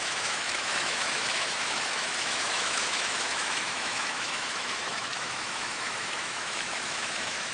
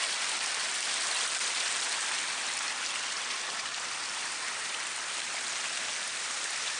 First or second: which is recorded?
second